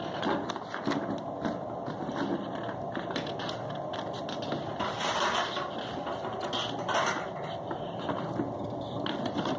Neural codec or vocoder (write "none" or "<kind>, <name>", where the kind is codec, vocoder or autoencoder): none